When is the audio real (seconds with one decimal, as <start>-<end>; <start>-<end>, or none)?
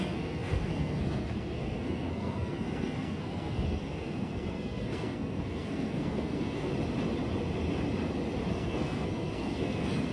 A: 6.7-8.5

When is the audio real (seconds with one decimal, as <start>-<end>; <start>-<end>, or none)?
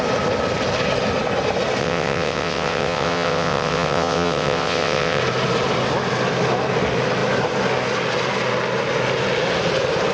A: 0.0-1.8; 5.2-10.1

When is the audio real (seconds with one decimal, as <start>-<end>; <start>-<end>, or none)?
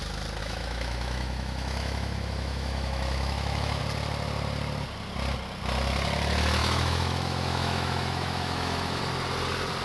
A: 0.0-0.4; 3.8-6.6; 9.0-9.8